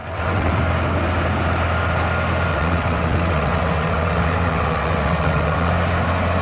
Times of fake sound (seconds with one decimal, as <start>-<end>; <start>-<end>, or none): 0.0-0.6; 2.5-5.7